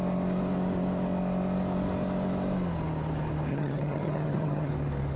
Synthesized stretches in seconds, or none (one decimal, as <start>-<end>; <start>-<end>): 3.5-4.7